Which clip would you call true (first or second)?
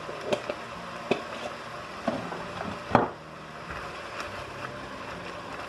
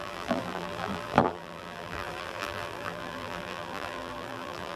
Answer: first